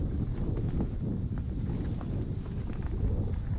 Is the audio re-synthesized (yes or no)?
no